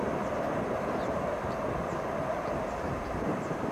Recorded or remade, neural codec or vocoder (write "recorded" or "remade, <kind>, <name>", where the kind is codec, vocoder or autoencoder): remade, vocoder, BigVGAN v2